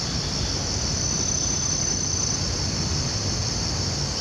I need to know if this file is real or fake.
real